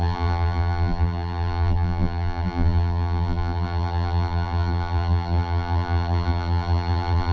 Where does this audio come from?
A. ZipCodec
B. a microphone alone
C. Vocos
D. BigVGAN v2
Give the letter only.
D